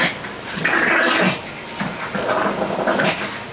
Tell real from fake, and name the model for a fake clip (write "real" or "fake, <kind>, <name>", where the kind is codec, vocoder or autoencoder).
real